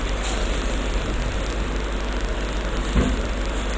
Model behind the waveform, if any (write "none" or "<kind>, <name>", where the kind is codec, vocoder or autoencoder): none